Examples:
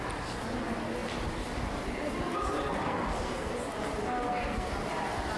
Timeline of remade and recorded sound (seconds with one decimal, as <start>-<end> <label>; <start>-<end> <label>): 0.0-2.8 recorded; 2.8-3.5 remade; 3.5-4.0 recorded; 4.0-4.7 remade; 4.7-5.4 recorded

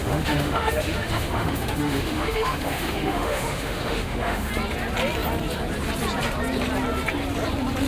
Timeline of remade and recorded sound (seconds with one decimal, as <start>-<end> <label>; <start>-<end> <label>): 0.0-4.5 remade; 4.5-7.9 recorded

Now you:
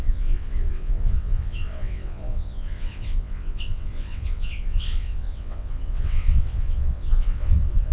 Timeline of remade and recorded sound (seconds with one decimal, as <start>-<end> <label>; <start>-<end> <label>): 0.0-7.9 remade

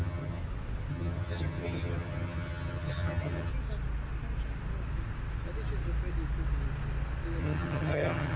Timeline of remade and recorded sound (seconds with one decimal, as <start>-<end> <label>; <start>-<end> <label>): 0.0-0.4 remade; 0.4-0.9 recorded; 0.9-3.5 remade; 3.5-7.4 recorded; 7.4-8.4 remade

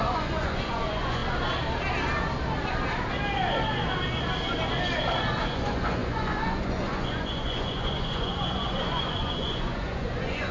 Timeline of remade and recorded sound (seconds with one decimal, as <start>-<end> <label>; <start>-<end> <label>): 0.0-1.2 remade; 1.2-5.4 recorded; 5.4-10.5 remade

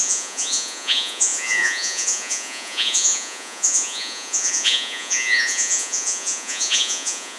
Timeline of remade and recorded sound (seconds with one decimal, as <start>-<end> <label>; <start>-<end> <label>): 0.0-7.4 remade

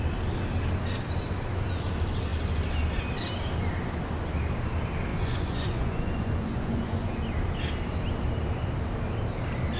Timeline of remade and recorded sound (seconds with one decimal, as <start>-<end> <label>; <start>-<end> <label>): 0.0-5.1 recorded; 5.1-7.2 remade; 7.2-9.8 recorded

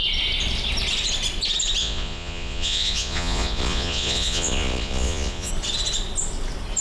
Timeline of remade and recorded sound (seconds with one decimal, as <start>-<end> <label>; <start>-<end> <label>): 0.0-1.8 recorded; 1.8-5.5 remade; 5.5-6.8 recorded